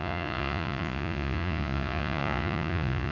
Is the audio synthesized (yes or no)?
yes